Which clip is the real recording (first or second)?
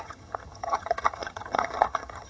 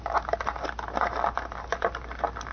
second